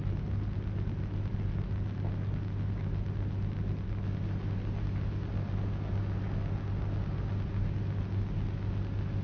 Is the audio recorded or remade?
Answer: recorded